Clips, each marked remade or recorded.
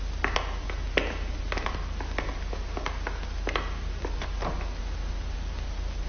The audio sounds recorded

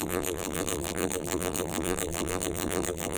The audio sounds remade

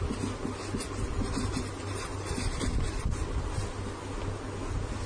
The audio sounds recorded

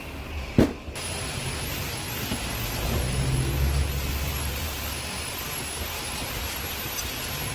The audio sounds recorded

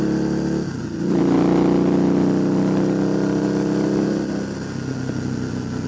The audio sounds recorded